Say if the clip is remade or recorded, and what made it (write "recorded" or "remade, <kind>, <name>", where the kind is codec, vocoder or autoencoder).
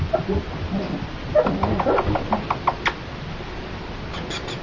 recorded